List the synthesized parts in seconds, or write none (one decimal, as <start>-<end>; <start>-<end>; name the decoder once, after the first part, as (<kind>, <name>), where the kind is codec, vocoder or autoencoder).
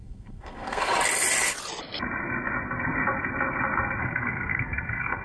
0.0-0.9 (codec, SNAC); 4.0-5.2